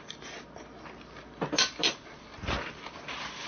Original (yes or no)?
yes